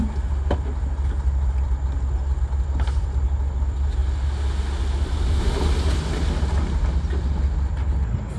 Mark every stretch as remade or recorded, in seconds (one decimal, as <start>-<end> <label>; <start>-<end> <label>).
0.0-8.4 recorded